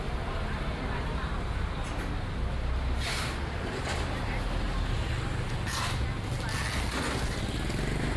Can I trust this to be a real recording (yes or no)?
yes